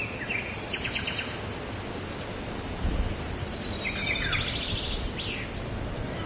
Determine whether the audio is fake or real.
real